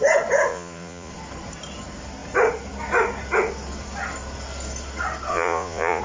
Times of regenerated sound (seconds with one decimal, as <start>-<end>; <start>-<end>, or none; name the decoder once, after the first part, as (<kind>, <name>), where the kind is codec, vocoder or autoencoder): 0.5-1.1 (vocoder, Vocos); 5.3-6.0